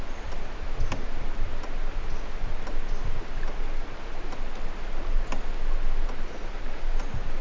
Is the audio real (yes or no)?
yes